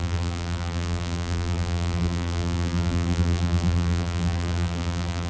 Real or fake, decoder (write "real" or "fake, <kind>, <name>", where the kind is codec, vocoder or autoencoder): fake, vocoder, BigVGAN v2